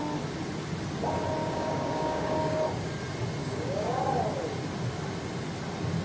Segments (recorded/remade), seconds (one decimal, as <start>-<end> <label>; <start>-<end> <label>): 0.0-1.4 recorded; 1.4-2.6 remade; 2.6-3.4 recorded; 3.4-4.0 remade; 4.0-6.0 recorded

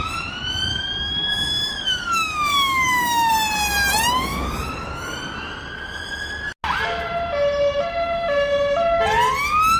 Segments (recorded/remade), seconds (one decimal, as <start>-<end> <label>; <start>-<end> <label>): 0.0-0.7 recorded; 0.7-3.3 remade; 3.3-9.8 recorded